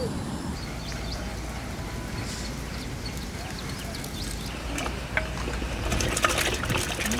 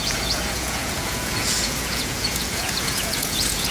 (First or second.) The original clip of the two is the first